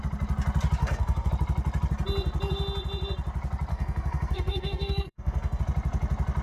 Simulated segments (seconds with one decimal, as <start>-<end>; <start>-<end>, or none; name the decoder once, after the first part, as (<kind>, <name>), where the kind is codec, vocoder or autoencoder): 0.8-1.3 (codec, SNAC); 3.7-5.6